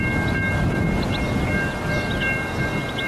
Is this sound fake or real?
real